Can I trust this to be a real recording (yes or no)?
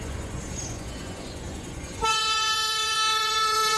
no